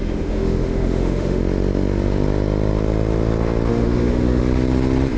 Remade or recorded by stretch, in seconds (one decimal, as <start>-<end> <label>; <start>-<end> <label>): 0.0-1.4 remade; 1.4-3.7 recorded; 3.7-4.4 remade; 4.4-5.2 recorded